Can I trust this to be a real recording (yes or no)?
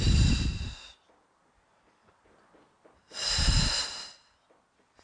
yes